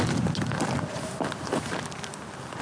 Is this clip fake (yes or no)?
no